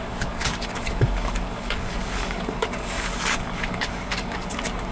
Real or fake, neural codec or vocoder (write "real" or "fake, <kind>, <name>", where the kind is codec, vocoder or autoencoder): fake, codec, DAC